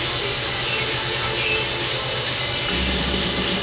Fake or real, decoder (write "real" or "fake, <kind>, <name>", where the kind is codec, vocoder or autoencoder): real